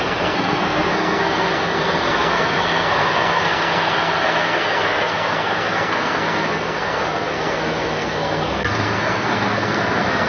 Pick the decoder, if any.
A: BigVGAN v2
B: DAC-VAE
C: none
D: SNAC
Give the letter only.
D